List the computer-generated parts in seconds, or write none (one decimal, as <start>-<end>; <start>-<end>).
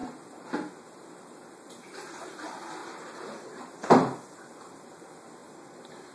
2.8-3.6; 5.4-6.1